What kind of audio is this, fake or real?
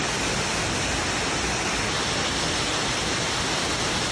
real